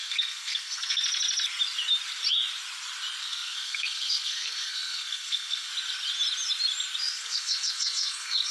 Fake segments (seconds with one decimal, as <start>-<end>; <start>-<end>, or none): 0.0-1.0; 3.2-5.7; 7.0-8.5